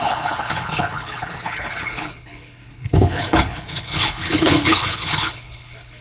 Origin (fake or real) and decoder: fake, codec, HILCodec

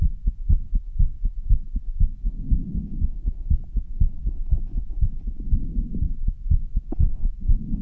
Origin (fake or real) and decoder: real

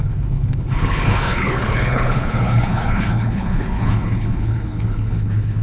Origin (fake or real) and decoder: fake, codec, HILCodec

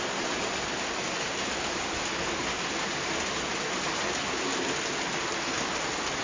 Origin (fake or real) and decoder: real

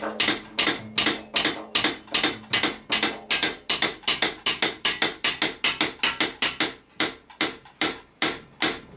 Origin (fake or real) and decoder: real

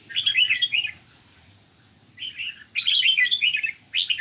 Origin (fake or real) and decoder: real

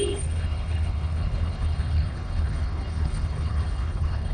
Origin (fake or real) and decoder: fake, codec, HILCodec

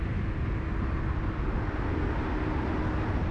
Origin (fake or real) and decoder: real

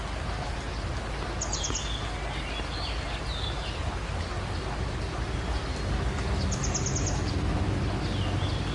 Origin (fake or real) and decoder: real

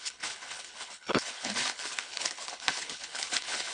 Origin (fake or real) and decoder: fake, codec, HILCodec